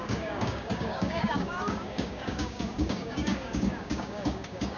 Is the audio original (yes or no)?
no